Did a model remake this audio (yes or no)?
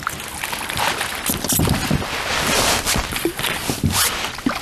no